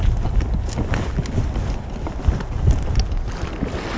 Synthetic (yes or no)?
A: no